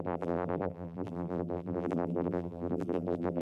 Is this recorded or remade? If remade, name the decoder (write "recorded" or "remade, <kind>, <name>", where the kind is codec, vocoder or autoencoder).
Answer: remade, vocoder, BigVGAN v2